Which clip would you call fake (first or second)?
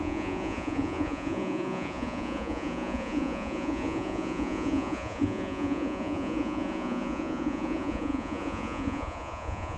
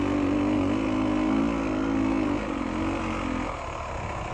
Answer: first